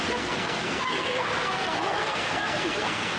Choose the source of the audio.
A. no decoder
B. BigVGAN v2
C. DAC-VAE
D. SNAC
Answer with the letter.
D